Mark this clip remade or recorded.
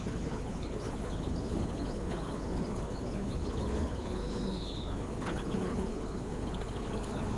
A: remade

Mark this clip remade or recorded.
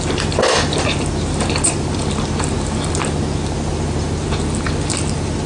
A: recorded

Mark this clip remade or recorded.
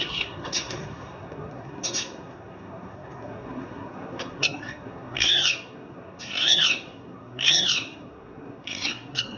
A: remade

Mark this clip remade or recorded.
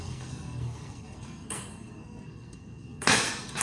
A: remade